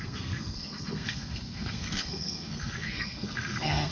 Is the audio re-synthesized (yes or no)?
yes